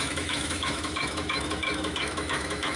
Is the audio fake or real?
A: fake